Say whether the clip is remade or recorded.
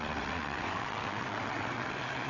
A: remade